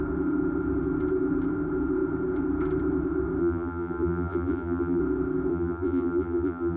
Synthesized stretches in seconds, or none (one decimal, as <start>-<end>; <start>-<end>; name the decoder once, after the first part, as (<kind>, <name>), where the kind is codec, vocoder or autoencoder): 3.4-5.0 (vocoder, BigVGAN v2); 5.5-6.8

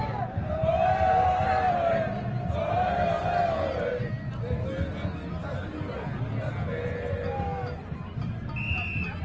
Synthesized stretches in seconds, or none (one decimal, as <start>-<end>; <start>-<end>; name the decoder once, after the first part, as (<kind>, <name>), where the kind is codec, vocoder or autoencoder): 0.0-4.1 (vocoder, BigVGAN v2)

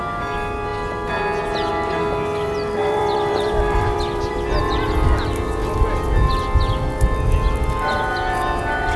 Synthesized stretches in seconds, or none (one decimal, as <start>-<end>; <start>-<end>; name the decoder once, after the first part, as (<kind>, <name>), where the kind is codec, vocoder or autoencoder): 2.8-4.6 (vocoder, BigVGAN v2)

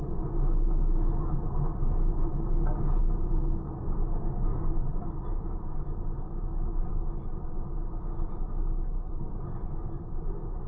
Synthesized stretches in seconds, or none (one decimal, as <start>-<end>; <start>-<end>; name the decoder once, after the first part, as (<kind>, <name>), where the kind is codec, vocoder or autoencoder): none

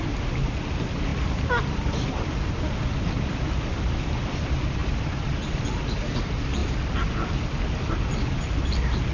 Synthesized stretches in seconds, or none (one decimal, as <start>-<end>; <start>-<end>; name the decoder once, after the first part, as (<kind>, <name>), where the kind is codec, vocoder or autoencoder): 1.1-4.2 (vocoder, BigVGAN v2)